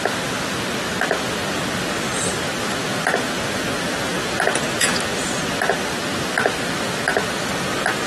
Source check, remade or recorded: recorded